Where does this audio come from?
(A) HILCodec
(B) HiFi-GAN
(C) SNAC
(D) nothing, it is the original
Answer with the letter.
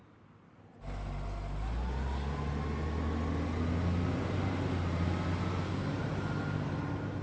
D